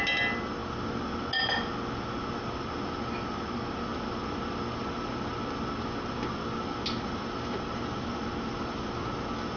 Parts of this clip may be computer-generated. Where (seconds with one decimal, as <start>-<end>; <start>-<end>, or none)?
none